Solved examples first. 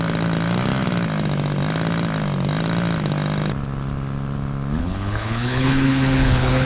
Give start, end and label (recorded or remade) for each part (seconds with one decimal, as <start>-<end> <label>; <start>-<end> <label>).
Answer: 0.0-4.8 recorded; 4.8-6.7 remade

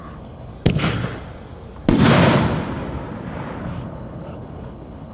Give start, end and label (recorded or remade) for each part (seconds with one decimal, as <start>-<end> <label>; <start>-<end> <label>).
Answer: 0.0-0.5 remade; 0.5-3.6 recorded; 3.6-5.1 remade

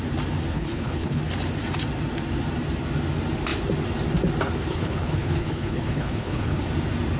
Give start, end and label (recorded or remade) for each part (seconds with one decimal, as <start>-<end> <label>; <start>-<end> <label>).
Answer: 0.0-0.5 recorded; 0.5-1.2 remade; 1.2-4.7 recorded; 4.7-6.6 remade; 6.6-7.2 recorded